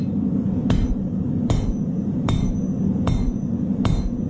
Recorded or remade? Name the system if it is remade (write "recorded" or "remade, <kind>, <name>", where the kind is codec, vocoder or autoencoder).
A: remade, vocoder, Vocos